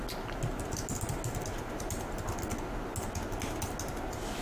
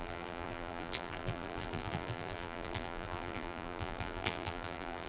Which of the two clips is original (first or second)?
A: first